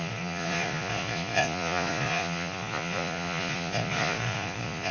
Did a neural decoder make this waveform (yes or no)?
yes